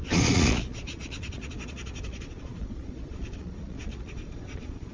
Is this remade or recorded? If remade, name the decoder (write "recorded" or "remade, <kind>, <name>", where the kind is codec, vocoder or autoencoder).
remade, vocoder, Vocos